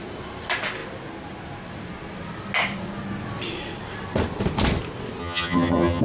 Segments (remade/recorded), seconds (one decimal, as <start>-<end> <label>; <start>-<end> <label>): 0.0-5.2 recorded; 5.2-6.0 remade